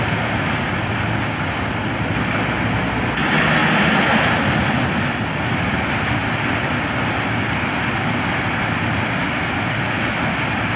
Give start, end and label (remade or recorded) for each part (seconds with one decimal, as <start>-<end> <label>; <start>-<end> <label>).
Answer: 0.0-10.8 recorded